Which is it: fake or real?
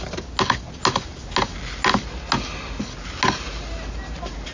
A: real